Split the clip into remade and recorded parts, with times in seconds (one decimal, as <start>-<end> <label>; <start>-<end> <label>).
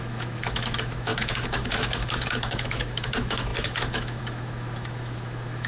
0.0-5.7 remade